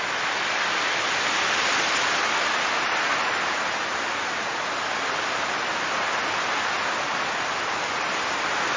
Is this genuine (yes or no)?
yes